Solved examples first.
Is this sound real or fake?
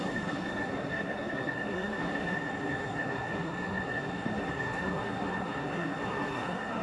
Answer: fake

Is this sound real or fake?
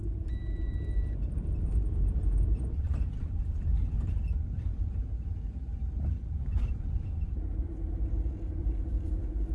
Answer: fake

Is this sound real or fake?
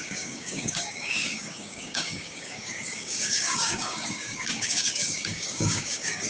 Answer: fake